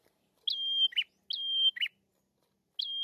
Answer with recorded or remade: recorded